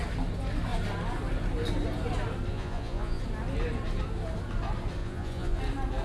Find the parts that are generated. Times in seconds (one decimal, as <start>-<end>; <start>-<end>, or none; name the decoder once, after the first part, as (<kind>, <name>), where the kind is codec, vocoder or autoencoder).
2.5-3.2 (vocoder, Vocos); 5.0-5.6